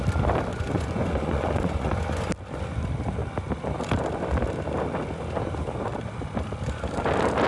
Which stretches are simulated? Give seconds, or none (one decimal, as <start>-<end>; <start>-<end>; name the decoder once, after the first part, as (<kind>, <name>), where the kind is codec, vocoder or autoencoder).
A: 0.5-2.3 (vocoder, Vocos)